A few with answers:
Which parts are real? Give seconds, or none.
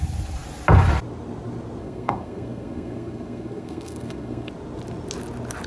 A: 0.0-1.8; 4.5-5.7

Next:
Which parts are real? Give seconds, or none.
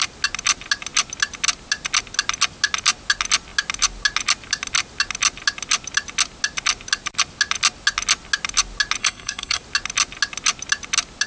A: 0.0-9.0; 9.6-11.3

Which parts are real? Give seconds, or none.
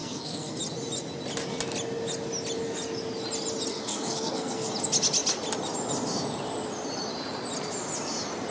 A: 0.6-3.7; 4.7-8.5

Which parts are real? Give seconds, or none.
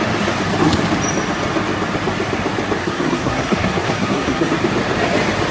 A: 0.0-2.8; 4.5-5.5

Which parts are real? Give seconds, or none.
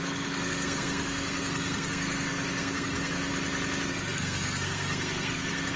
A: 3.3-3.9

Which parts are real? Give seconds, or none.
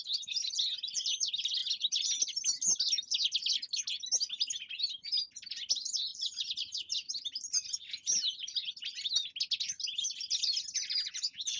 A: 0.0-11.6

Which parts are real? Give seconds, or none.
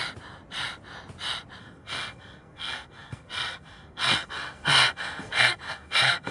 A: 0.0-1.6